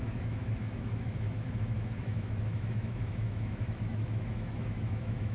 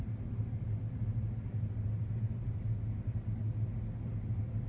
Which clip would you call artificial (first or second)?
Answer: first